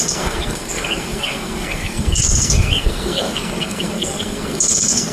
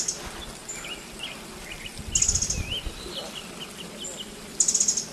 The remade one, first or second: first